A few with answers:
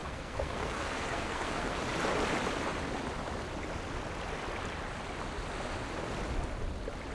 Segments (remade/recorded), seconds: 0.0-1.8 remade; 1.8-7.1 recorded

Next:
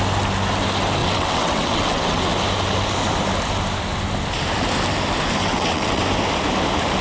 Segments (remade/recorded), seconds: 0.0-1.0 recorded; 1.0-2.3 remade; 2.3-5.4 recorded; 5.4-6.0 remade; 6.0-7.0 recorded

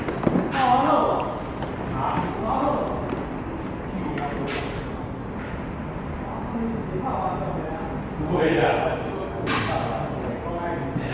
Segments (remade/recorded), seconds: 0.0-11.1 recorded

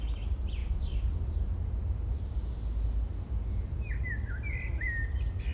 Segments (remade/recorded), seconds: 0.0-5.5 recorded

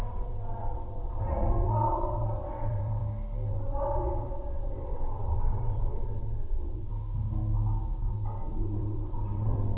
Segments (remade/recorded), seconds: 0.0-3.0 remade; 3.0-3.5 recorded; 3.5-6.9 remade; 6.9-8.0 recorded; 8.0-9.8 remade

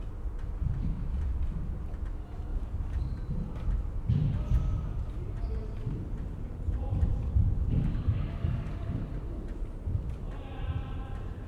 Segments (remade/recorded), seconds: 0.0-2.5 recorded; 2.5-3.3 remade; 3.3-7.1 recorded; 7.1-9.0 remade; 9.0-11.5 recorded